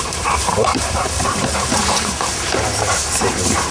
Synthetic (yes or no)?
yes